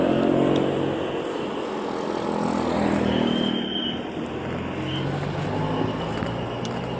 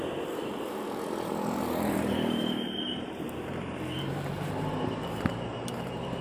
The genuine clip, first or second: first